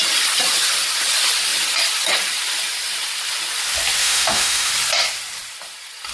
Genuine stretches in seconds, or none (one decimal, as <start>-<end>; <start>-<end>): 0.0-4.0; 4.7-6.1